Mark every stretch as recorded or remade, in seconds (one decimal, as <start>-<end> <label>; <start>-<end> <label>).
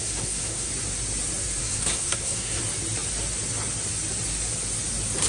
0.0-0.7 remade; 0.7-1.6 recorded; 1.6-2.6 remade; 2.6-5.3 recorded